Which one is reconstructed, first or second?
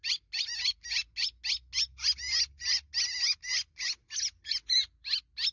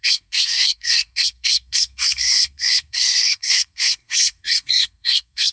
second